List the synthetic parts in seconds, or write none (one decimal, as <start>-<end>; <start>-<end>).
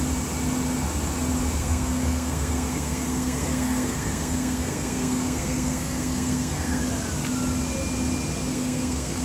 1.6-6.8; 8.5-9.2